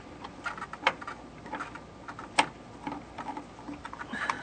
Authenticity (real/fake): real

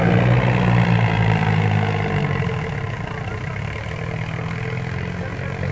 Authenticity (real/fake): real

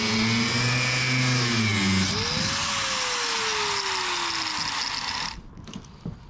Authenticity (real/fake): real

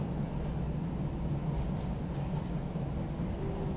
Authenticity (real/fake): real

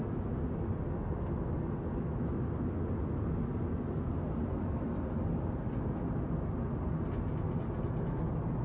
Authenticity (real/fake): real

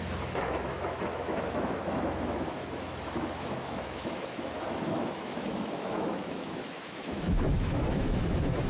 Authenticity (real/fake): fake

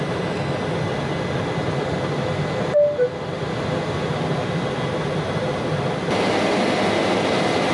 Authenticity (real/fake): real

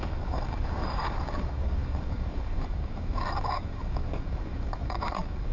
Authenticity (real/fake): fake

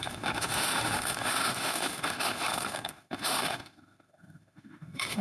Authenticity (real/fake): fake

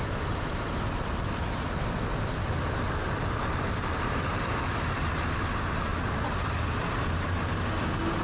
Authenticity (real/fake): real